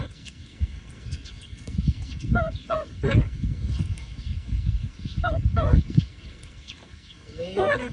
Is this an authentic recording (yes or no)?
no